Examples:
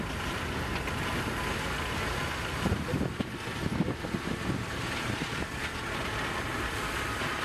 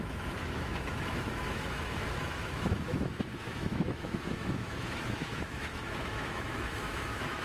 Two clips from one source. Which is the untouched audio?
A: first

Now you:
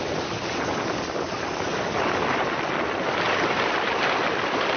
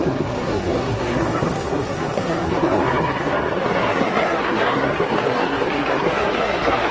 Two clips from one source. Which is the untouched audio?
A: first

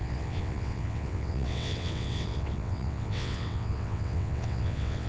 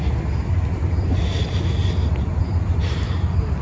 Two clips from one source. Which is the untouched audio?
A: second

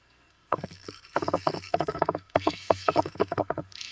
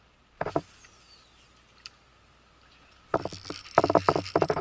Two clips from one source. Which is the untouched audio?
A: second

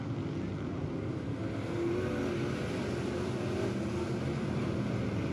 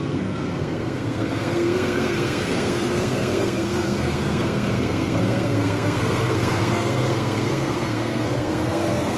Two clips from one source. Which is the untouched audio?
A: first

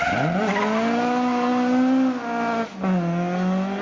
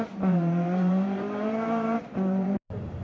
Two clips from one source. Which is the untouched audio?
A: first